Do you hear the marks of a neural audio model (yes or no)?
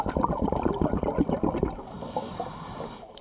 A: no